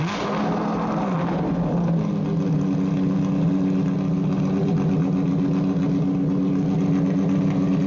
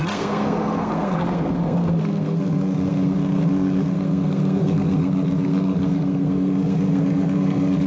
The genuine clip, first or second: first